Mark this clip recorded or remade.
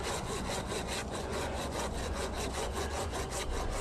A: remade